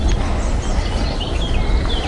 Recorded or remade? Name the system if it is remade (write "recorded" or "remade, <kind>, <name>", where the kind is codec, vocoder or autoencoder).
recorded